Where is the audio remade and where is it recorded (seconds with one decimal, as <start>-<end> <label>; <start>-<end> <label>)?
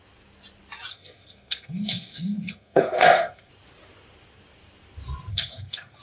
0.0-0.9 recorded; 0.9-3.5 remade; 3.5-5.3 recorded; 5.3-6.0 remade